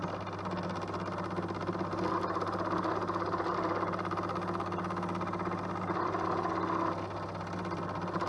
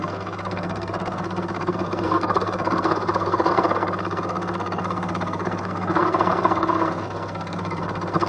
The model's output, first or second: second